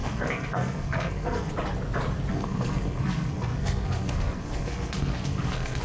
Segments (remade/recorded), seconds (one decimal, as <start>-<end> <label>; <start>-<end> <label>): 0.0-1.5 remade; 1.5-2.3 recorded; 2.3-5.8 remade